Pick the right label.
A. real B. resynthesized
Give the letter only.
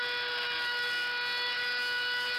A